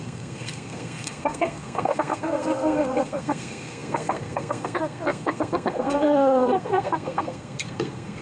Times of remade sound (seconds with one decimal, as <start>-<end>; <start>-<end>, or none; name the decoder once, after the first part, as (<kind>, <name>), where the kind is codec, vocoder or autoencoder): 0.0-8.2 (codec, SNAC)

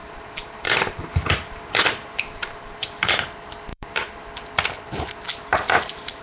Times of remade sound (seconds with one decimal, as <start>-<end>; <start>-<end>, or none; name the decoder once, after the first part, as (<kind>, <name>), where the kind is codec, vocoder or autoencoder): 0.0-3.2 (vocoder, BigVGAN v2); 3.7-4.3; 5.5-6.2